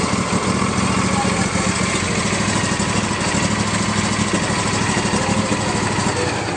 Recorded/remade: recorded